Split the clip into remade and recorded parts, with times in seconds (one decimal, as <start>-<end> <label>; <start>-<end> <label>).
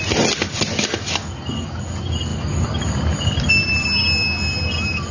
0.0-5.1 recorded